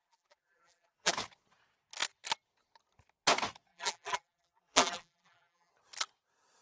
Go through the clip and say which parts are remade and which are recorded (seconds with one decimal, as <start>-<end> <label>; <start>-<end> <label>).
0.0-1.1 remade; 1.1-3.7 recorded; 3.7-5.7 remade; 5.7-6.6 recorded